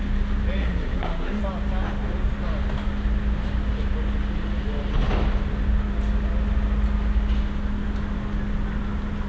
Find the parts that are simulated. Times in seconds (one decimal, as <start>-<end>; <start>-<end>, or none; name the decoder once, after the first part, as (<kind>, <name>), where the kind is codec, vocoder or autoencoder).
0.6-1.4 (codec, SNAC)